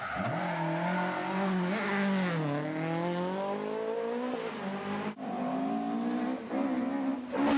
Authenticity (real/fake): real